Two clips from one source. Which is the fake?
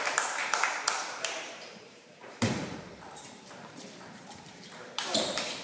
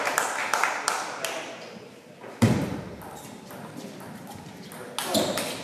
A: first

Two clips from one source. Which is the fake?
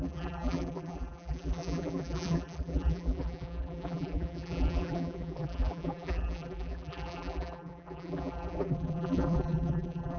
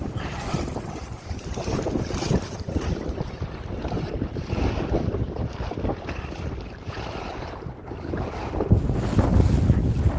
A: first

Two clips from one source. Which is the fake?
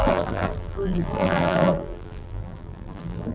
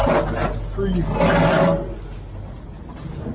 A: first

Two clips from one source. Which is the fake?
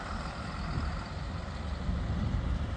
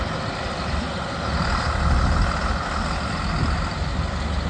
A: first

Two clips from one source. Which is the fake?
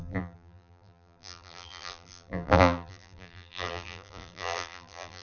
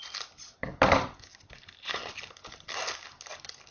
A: first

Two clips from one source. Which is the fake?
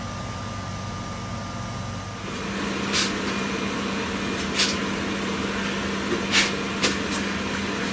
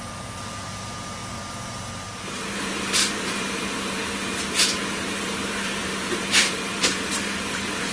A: second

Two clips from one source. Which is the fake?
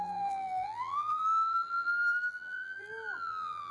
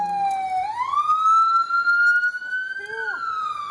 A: first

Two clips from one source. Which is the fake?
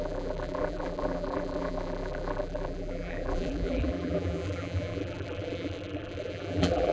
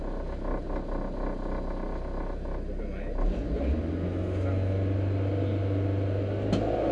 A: first